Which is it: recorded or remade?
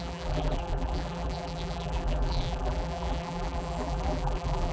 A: remade